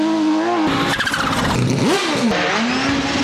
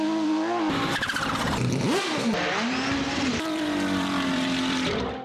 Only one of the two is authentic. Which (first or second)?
first